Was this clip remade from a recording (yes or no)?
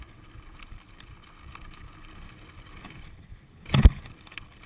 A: no